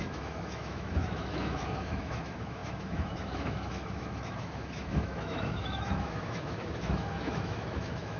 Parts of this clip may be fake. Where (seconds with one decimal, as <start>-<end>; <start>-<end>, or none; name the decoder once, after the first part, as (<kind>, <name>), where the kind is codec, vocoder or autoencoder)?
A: 0.0-8.2 (autoencoder, DAC-VAE)